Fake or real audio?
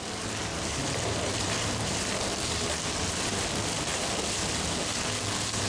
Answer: real